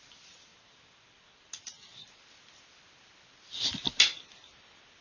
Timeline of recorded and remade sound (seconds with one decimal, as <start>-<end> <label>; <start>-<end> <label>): 0.0-5.0 recorded